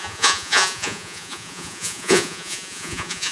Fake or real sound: fake